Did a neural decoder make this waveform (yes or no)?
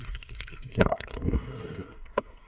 yes